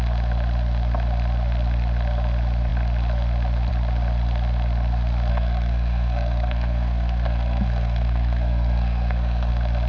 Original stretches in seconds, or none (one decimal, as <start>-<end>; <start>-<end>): 0.0-5.3; 9.5-9.9